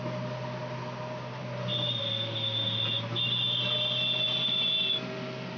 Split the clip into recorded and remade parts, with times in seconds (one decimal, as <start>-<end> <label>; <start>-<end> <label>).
0.0-5.6 recorded